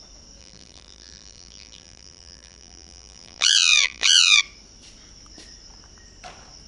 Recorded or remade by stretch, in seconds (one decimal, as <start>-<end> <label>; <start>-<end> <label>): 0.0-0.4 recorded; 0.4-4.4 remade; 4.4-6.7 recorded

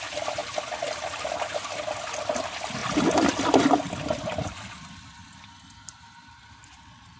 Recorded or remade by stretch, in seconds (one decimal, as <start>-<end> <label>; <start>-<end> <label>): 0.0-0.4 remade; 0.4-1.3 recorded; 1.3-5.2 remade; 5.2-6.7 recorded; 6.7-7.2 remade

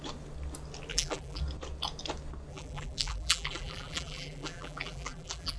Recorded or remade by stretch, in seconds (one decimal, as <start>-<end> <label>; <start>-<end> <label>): 0.0-0.9 recorded; 0.9-1.4 remade; 1.4-2.5 recorded; 2.5-5.6 remade

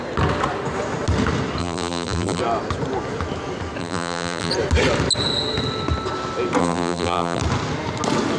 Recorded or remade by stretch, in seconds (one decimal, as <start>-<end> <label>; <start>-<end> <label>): 0.0-1.6 recorded; 1.6-2.4 remade; 2.4-3.8 recorded; 3.8-4.5 remade; 4.5-6.6 recorded; 6.6-7.4 remade; 7.4-8.4 recorded